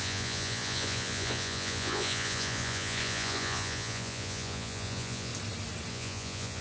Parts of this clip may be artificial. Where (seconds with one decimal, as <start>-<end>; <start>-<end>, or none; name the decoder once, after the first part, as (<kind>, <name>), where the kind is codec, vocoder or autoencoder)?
0.0-5.3 (vocoder, Vocos); 5.9-6.6